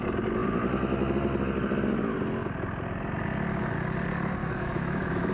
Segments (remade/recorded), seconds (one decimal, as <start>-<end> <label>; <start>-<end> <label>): 0.0-4.4 recorded; 4.4-5.3 remade